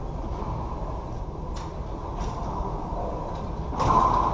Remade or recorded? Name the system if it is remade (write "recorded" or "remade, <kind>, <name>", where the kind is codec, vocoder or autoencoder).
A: recorded